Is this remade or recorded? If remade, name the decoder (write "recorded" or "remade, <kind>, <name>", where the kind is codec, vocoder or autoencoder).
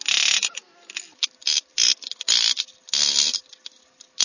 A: recorded